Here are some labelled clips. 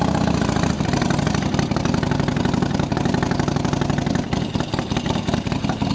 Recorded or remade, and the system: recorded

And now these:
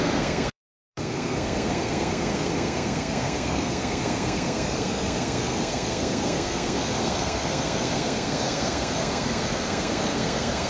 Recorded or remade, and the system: remade, codec, SNAC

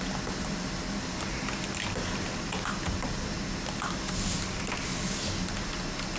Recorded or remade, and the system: recorded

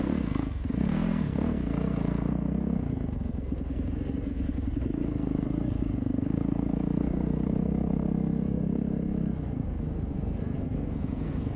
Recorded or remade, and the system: remade, codec, SNAC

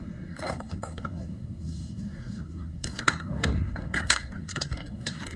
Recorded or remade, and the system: remade, codec, SNAC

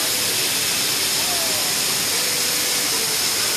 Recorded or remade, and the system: recorded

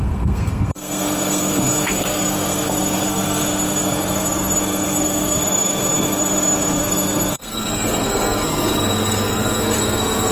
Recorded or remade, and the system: remade, codec, SNAC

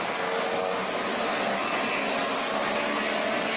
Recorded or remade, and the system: recorded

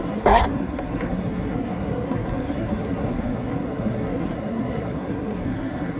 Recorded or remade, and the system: remade, codec, SNAC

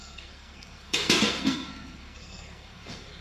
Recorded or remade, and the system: remade, codec, SNAC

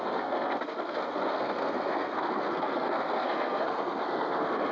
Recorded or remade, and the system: remade, codec, SNAC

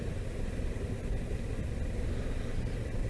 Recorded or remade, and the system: recorded